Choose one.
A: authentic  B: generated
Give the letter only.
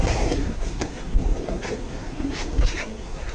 B